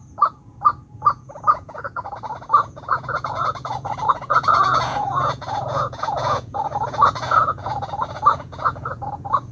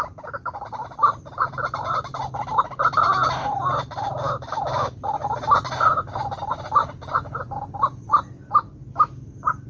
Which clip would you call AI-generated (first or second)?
first